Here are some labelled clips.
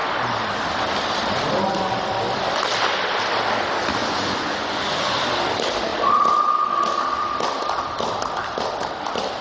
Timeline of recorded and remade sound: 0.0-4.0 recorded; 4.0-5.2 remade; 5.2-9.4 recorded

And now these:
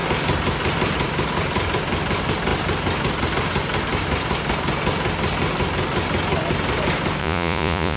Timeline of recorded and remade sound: 0.0-7.2 recorded; 7.2-8.0 remade

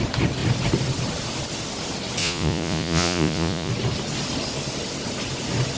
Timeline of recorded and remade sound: 0.0-2.2 recorded; 2.2-3.7 remade; 3.7-5.8 recorded

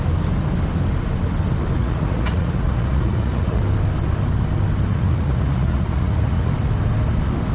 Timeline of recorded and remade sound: 0.0-1.8 recorded; 1.8-3.6 remade; 3.6-4.9 recorded; 4.9-6.5 remade; 6.5-7.5 recorded

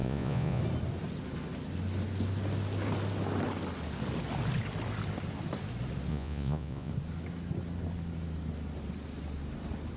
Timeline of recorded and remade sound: 0.0-0.6 remade; 0.6-6.1 recorded; 6.1-6.9 remade; 6.9-10.0 recorded

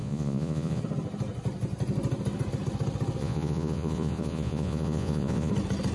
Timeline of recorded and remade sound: 0.0-0.8 remade; 0.8-3.2 recorded; 3.2-5.5 remade; 5.5-5.9 recorded